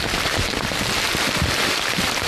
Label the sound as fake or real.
real